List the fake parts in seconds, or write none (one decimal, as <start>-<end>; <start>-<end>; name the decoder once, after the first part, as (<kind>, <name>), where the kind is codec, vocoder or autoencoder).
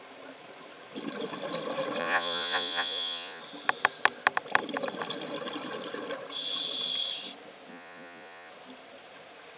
2.0-3.4 (vocoder, Vocos); 7.7-8.5